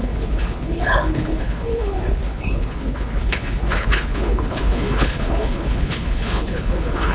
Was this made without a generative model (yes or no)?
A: no